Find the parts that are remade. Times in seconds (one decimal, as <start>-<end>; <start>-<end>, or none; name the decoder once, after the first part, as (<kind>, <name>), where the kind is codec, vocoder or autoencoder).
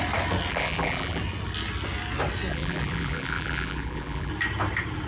0.5-1.2 (vocoder, BigVGAN v2); 2.5-4.3